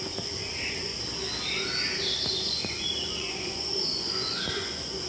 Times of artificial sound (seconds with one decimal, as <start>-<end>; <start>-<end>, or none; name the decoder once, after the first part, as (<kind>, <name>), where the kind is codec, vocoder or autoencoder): 0.0-0.9 (vocoder, Vocos); 2.2-5.1